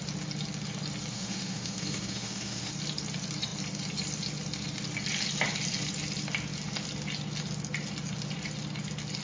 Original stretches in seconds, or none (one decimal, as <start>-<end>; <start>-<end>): 0.0-1.1; 2.7-9.2